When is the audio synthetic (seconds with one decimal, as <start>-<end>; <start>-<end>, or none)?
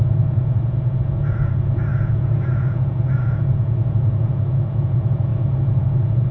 0.0-5.3; 5.8-6.3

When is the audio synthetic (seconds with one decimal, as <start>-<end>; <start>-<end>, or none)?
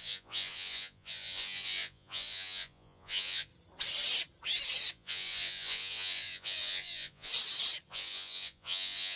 0.0-3.5; 4.9-7.3; 7.9-9.2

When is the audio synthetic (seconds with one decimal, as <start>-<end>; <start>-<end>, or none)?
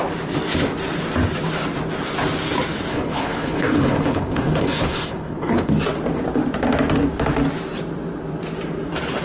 2.9-5.7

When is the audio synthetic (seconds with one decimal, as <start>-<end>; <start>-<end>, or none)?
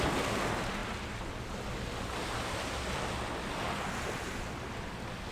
none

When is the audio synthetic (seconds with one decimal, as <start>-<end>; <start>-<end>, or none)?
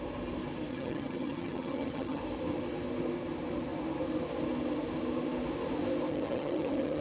0.7-2.2; 6.1-7.0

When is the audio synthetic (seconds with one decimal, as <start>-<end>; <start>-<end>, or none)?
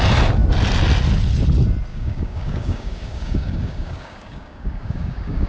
1.9-5.5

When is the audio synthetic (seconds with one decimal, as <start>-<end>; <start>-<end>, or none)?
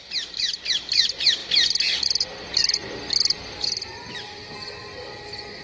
none